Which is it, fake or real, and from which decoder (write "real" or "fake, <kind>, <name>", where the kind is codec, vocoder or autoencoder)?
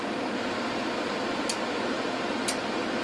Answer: real